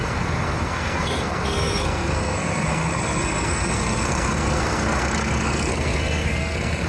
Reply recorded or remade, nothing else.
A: remade